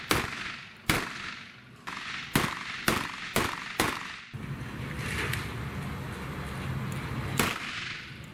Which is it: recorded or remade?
recorded